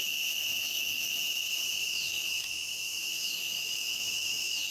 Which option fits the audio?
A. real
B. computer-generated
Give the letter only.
B